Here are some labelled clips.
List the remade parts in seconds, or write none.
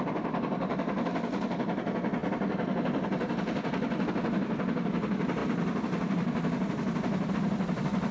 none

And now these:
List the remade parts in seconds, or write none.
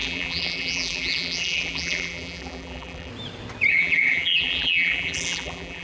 0.0-3.1; 3.7-5.8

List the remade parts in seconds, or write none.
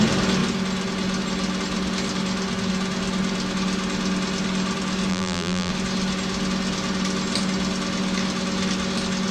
5.1-5.7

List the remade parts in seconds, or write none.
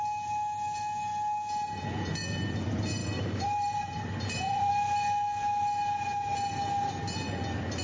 3.0-4.7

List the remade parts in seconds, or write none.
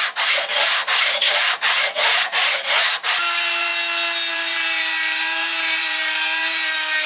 0.0-3.7; 4.3-7.1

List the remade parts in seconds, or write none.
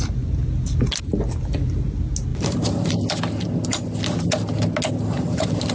2.3-2.9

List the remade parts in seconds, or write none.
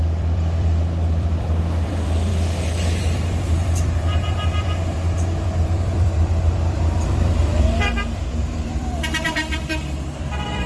0.0-2.3; 3.0-10.7